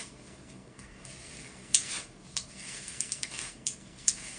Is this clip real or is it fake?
fake